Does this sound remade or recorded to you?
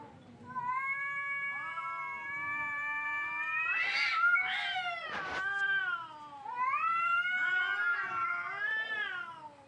recorded